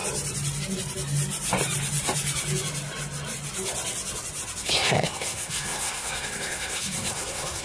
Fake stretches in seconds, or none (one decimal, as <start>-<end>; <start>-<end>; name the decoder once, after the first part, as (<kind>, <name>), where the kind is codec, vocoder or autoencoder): 4.6-7.6 (codec, SNAC)